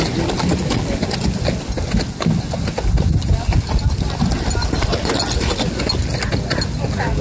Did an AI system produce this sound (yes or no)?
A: no